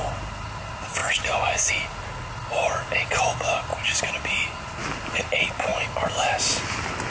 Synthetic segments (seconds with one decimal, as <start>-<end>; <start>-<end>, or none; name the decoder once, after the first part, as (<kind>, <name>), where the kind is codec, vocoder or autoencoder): 1.0-1.7 (vocoder, Vocos)